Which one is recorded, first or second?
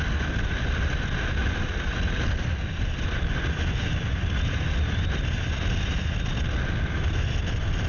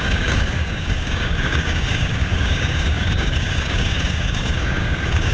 first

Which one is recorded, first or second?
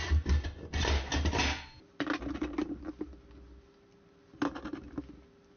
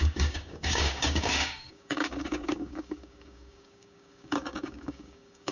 first